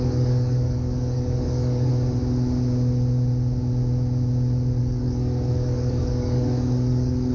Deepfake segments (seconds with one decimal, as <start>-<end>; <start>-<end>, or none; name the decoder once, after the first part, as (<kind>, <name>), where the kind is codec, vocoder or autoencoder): 0.0-1.9 (codec, DAC); 4.8-7.3